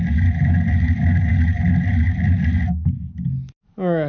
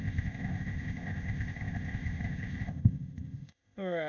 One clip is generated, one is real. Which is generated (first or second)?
second